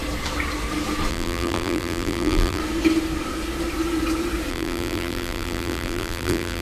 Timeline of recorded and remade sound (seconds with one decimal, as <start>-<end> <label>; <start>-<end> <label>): 0.0-1.1 recorded; 1.1-2.6 remade; 2.6-4.5 recorded; 4.5-6.6 remade

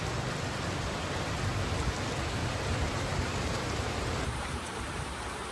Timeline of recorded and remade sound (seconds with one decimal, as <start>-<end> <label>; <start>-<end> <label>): 0.0-2.4 recorded; 2.4-5.1 remade; 5.1-5.5 recorded

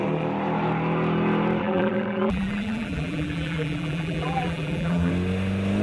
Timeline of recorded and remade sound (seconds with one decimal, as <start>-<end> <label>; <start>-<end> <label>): 0.0-1.6 recorded; 1.6-5.1 remade; 5.1-5.8 recorded

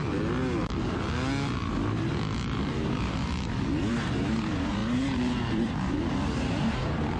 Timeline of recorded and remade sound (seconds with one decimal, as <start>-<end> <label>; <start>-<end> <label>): 0.0-2.7 recorded; 2.7-3.3 remade; 3.3-3.9 recorded; 3.9-7.2 remade

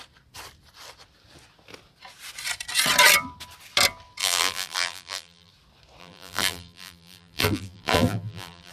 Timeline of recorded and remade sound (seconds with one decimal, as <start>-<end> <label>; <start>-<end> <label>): 0.0-4.2 recorded; 4.2-5.5 remade; 5.5-6.0 recorded; 6.0-8.7 remade